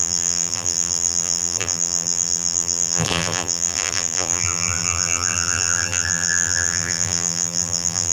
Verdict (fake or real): fake